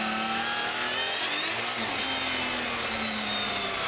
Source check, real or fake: real